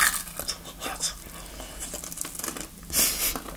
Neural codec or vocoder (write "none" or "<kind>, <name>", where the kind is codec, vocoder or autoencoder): none